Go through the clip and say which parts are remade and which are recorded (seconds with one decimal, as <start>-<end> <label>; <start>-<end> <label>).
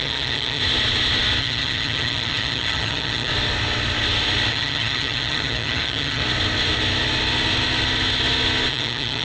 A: 0.0-0.6 remade; 0.6-1.4 recorded; 1.4-3.3 remade; 3.3-4.5 recorded; 4.5-6.2 remade; 6.2-8.7 recorded; 8.7-9.2 remade